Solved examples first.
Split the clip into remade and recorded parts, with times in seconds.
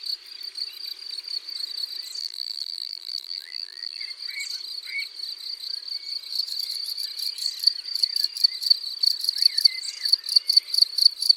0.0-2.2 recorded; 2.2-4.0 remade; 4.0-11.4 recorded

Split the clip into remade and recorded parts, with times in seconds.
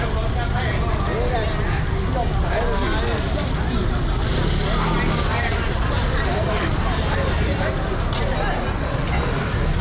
0.0-5.3 recorded; 5.3-7.6 remade; 7.6-9.8 recorded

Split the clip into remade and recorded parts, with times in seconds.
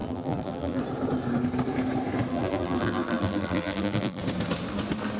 0.0-0.8 remade; 0.8-2.3 recorded; 2.3-4.2 remade; 4.2-5.2 recorded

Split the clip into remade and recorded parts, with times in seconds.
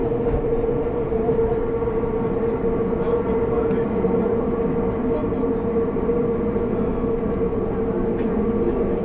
0.0-9.0 recorded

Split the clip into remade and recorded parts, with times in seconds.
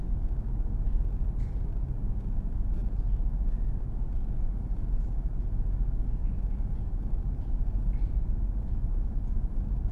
0.0-6.2 recorded; 6.2-9.1 remade; 9.1-9.9 recorded